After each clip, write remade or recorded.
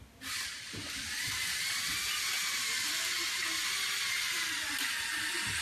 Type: recorded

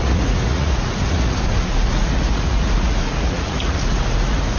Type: remade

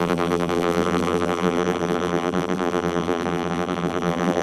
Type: remade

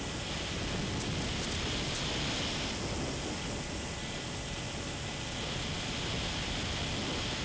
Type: recorded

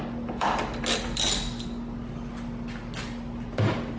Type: recorded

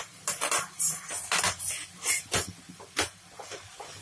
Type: recorded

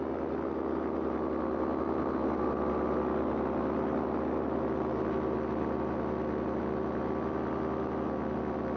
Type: recorded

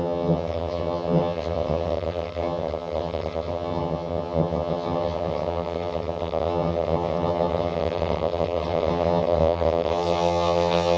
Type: remade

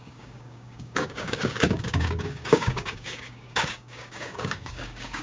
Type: remade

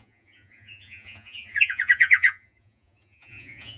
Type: remade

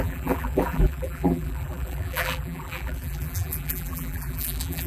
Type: remade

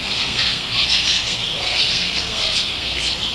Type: remade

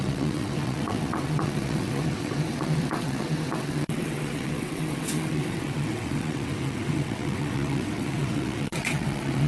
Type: remade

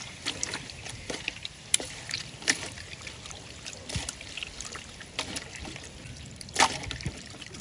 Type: remade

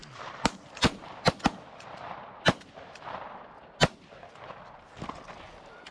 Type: recorded